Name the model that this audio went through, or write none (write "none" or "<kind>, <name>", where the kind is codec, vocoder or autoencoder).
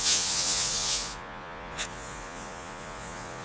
vocoder, Vocos